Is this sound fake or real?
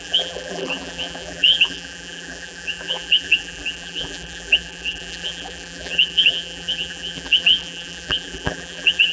fake